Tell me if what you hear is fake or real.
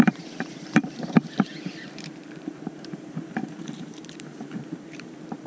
fake